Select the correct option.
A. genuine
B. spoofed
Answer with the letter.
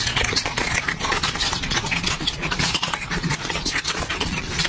B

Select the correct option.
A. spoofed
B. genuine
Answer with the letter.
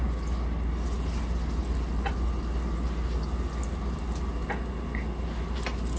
B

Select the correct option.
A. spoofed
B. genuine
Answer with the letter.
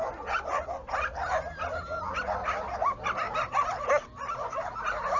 B